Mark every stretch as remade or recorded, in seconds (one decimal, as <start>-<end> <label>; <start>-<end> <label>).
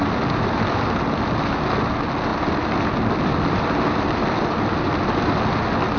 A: 0.0-6.0 recorded